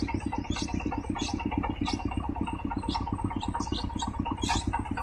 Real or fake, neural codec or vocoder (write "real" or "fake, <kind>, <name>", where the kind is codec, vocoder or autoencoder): real